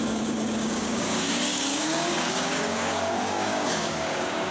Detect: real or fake fake